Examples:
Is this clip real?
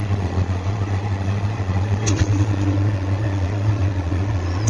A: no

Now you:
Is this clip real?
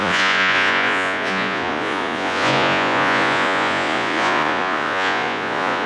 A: no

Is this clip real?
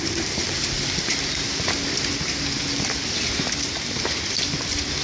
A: yes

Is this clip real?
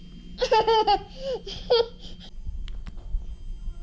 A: yes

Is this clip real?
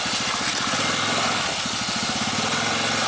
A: yes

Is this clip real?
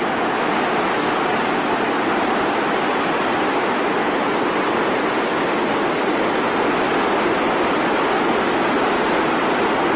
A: yes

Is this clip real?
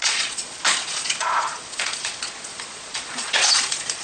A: no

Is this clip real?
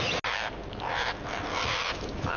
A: yes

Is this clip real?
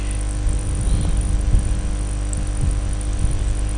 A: yes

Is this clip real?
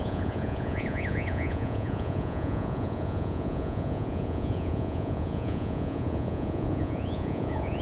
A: no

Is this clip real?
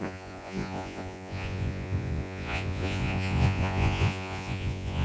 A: no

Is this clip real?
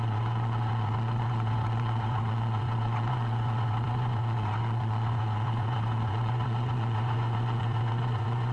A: no